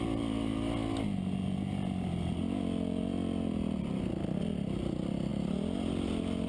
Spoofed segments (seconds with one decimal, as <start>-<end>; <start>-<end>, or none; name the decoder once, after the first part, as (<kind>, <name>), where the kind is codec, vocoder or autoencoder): none